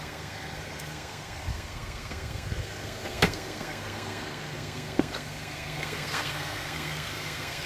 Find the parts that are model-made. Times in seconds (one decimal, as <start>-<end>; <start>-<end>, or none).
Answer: 0.0-7.7